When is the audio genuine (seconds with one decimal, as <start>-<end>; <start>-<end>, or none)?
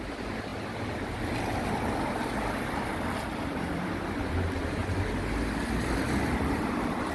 0.5-3.4; 4.8-6.2